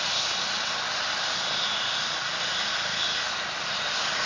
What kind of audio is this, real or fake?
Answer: real